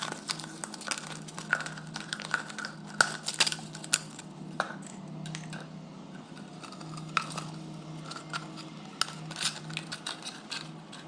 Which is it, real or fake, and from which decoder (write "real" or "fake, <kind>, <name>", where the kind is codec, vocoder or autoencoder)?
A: real